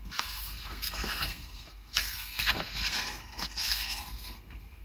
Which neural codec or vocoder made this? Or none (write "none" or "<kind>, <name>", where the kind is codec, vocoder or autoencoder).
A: codec, SNAC